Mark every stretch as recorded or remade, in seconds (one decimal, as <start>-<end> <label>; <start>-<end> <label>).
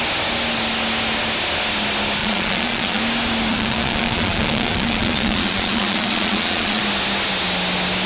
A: 0.0-2.2 recorded; 2.2-3.0 remade; 3.0-3.5 recorded; 3.5-6.8 remade; 6.8-8.1 recorded